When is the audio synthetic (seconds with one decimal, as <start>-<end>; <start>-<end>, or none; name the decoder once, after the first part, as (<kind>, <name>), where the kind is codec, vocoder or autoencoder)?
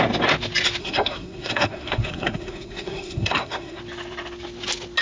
0.8-3.8 (codec, SNAC)